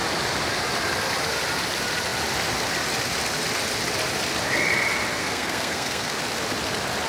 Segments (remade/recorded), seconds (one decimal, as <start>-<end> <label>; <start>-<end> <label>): 0.0-5.2 recorded; 5.2-6.2 remade; 6.2-7.1 recorded